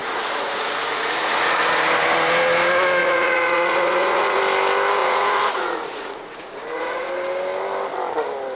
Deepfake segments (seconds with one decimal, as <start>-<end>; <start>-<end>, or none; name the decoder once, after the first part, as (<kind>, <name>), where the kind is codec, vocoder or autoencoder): 0.0-1.6 (vocoder, Vocos); 3.0-4.4; 5.0-7.1

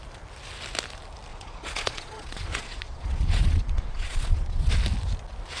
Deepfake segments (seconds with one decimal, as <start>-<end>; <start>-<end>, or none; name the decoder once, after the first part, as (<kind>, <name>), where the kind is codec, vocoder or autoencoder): 1.3-4.7 (vocoder, Vocos)

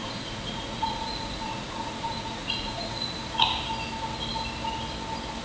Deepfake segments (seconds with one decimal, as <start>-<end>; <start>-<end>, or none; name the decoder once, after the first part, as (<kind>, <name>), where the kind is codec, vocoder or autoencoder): 0.0-3.1 (vocoder, Vocos)

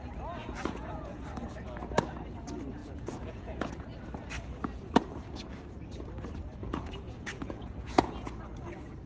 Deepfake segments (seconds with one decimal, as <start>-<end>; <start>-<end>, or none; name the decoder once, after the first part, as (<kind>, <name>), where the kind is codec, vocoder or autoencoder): 0.4-1.2 (vocoder, Vocos); 2.8-3.7; 6.6-8.1